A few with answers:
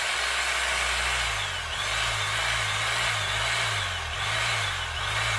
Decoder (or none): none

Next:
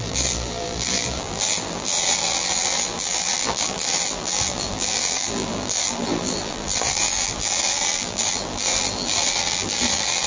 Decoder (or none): vocoder, BigVGAN v2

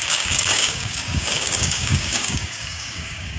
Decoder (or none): codec, DAC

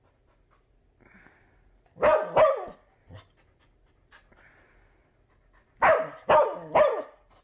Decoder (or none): none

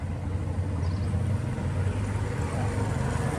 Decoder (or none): none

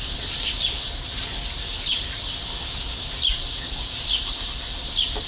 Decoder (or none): vocoder, BigVGAN v2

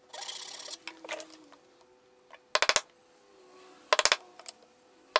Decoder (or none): none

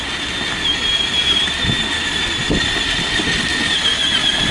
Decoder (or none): none